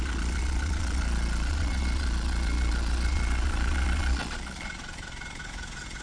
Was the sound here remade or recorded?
remade